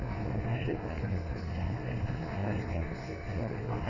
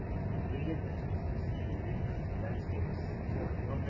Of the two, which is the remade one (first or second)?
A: first